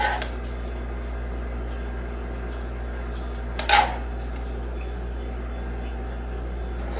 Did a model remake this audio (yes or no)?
no